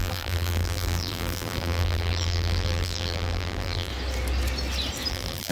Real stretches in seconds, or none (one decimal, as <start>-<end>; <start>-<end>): 3.9-5.1